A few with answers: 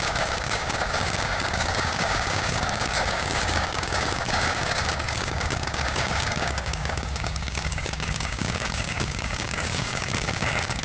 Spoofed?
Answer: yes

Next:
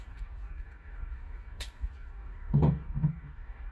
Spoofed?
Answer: yes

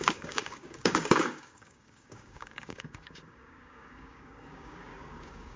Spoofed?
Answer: yes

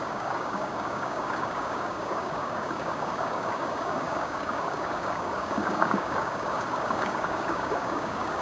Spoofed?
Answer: yes